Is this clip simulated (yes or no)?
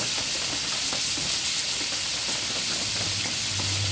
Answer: no